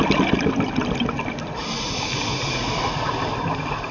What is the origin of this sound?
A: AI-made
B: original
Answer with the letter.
B